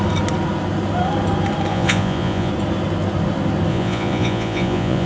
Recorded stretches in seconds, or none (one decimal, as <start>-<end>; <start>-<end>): 0.0-1.7; 2.5-3.7